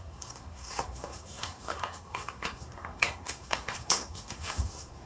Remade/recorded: remade